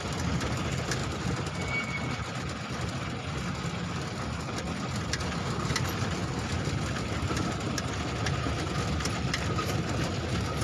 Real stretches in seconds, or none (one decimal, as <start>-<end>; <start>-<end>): 1.0-5.8; 6.2-8.9